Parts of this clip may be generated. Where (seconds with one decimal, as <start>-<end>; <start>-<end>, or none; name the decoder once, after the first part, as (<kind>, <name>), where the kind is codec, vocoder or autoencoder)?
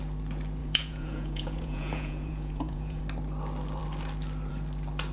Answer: 0.6-3.0 (vocoder, Vocos)